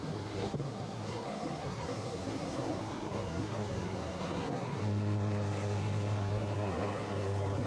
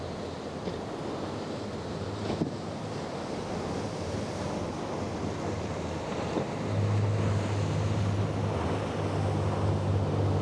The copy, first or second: first